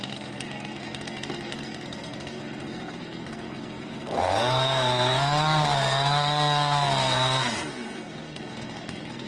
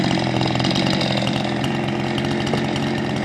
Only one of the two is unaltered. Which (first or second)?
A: second